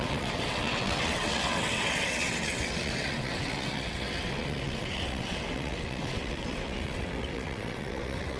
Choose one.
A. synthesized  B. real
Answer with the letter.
A